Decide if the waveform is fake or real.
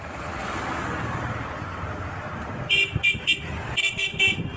real